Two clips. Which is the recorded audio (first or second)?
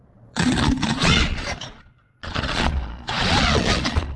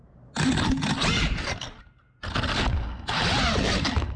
second